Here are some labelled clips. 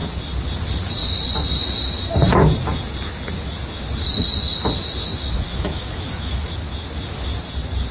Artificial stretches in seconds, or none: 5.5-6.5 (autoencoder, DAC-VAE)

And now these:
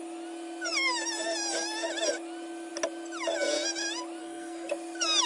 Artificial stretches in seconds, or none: 4.2-4.7 (codec, SNAC)

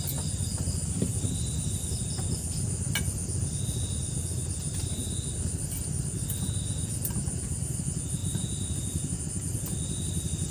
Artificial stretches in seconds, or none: none

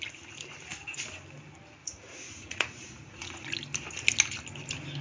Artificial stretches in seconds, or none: 1.8-3.5 (vocoder, Vocos)

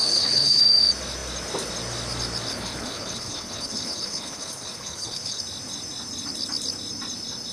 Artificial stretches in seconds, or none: 0.0-0.6 (codec, HILCodec); 2.5-5.4

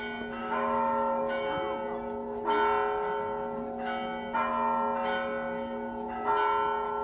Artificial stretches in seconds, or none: 0.4-1.2 (autoencoder, DAC-VAE)